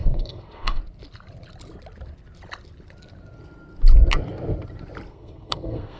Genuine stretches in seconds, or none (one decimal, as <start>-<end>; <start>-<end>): 0.8-5.1